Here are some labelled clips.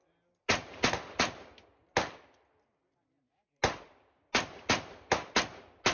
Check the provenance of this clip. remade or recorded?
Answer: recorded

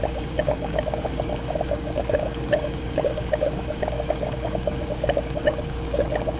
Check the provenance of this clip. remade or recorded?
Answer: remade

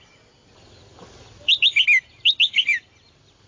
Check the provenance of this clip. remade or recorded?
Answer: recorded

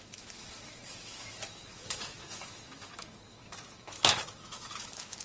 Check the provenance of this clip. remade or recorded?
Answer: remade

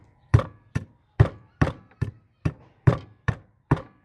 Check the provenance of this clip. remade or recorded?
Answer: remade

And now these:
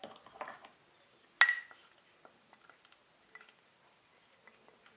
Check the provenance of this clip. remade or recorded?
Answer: recorded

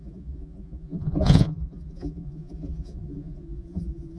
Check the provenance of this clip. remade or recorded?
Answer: remade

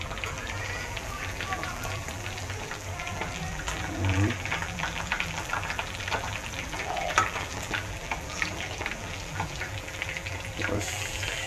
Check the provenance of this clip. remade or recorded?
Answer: remade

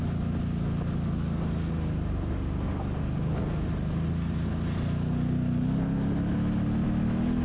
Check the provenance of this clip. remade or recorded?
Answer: recorded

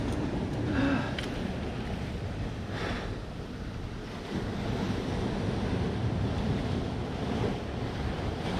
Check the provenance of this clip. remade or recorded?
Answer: recorded